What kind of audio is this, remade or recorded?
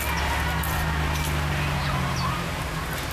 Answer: recorded